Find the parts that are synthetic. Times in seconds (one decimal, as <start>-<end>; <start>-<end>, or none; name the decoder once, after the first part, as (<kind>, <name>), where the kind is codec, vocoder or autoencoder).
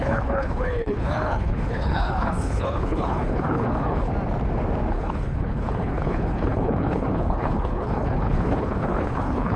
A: 0.0-4.1 (codec, HILCodec); 4.9-9.6